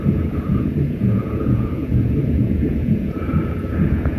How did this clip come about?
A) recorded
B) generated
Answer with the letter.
B